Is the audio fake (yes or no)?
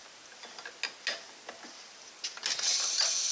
no